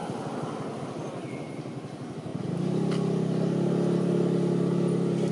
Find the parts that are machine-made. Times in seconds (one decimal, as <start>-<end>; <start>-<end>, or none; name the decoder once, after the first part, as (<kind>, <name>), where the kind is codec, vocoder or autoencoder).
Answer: none